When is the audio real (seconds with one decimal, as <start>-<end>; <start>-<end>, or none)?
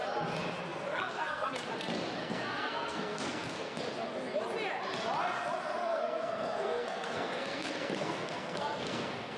0.0-0.9; 1.5-2.2; 3.8-5.8